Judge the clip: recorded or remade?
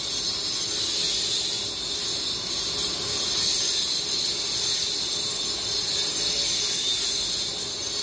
recorded